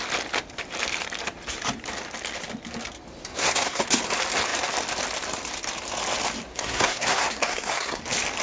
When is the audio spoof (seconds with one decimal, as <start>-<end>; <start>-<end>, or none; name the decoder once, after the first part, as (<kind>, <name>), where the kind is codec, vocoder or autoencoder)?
3.3-3.8 (codec, SNAC); 6.5-8.0